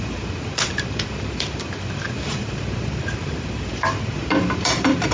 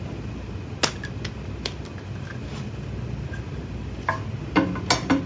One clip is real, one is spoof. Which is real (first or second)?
second